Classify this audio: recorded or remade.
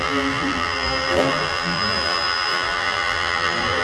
remade